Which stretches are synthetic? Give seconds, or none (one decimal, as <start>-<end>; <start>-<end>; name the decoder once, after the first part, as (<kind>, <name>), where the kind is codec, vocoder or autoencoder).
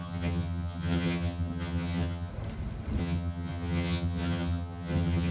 0.0-2.3 (vocoder, HiFi-GAN); 3.0-5.3